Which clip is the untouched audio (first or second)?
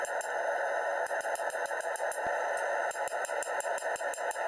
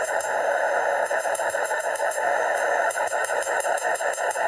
first